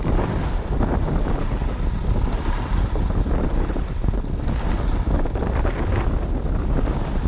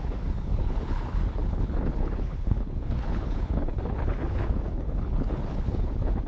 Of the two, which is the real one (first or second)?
first